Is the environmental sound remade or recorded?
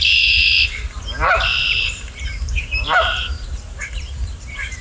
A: remade